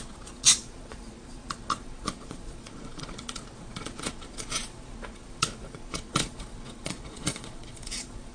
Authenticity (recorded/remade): remade